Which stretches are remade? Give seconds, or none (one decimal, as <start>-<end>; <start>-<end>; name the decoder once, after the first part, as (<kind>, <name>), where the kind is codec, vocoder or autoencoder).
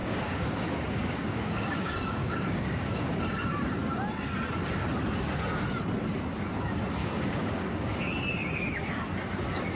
0.0-3.2 (codec, DAC); 7.0-8.0